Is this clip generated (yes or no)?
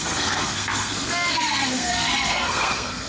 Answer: yes